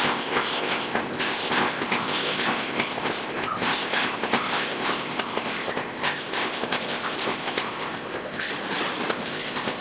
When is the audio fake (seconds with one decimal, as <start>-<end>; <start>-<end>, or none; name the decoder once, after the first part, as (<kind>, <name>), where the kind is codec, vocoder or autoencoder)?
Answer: 0.0-8.5 (codec, ZipCodec); 9.1-9.8